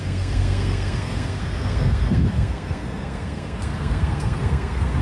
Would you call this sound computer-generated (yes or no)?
yes